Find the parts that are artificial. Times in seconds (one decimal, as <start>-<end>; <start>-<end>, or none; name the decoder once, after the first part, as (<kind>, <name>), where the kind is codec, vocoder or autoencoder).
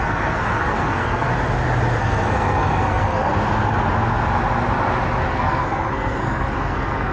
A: 0.0-1.3 (codec, SNAC); 2.0-3.3; 5.3-7.1